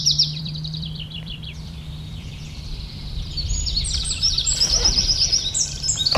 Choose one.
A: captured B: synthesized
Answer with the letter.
B